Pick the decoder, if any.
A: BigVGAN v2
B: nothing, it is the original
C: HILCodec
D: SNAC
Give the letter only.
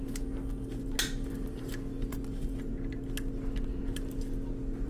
B